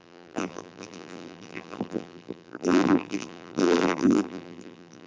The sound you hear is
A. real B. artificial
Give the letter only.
B